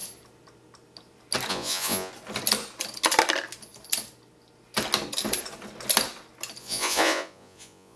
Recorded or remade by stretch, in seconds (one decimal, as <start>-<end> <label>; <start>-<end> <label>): 0.0-1.5 recorded; 1.5-2.1 remade; 2.1-6.6 recorded; 6.6-8.0 remade